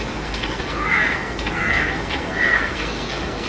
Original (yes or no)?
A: no